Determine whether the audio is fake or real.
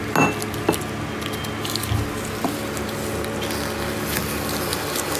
real